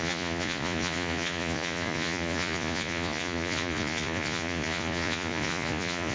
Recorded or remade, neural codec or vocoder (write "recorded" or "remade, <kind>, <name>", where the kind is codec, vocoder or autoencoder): remade, vocoder, Vocos